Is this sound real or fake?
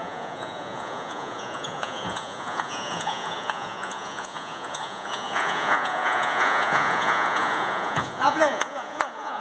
fake